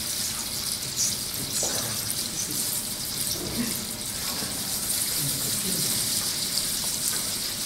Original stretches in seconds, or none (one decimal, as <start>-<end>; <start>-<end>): 0.0-1.7; 3.6-4.2